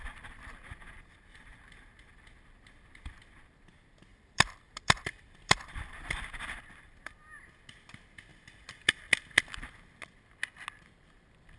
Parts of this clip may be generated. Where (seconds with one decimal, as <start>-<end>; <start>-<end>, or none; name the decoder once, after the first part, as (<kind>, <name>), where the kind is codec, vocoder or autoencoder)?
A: 4.1-7.4 (vocoder, BigVGAN v2); 8.3-9.6